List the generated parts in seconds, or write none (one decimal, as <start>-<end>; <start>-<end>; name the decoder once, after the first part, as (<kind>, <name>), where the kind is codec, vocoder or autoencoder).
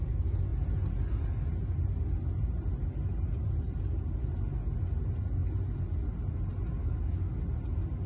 6.8-7.4 (codec, DAC)